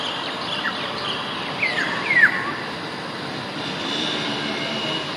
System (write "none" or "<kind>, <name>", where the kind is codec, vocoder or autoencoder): vocoder, BigVGAN v2